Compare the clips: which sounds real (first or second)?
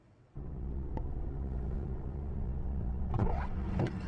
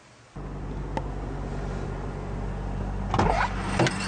second